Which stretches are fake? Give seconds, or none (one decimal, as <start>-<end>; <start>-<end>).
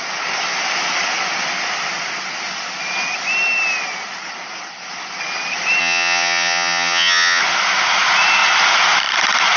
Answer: 5.8-7.4